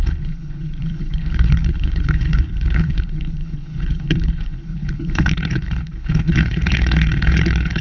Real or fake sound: fake